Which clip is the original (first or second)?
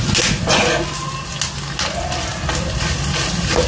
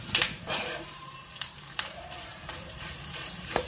first